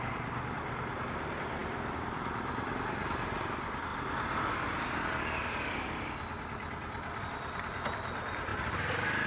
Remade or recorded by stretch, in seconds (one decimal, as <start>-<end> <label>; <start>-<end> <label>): 0.0-9.3 recorded